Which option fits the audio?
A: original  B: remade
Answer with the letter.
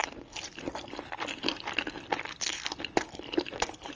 A